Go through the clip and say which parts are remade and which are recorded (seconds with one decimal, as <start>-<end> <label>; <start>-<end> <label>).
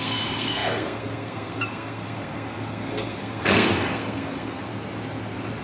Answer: 0.0-4.7 remade; 4.7-5.6 recorded